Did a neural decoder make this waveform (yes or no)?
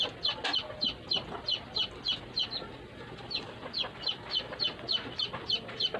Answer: no